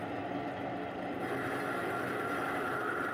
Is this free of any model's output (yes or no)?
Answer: yes